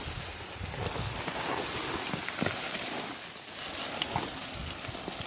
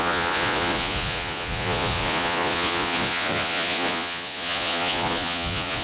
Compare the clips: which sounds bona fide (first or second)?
first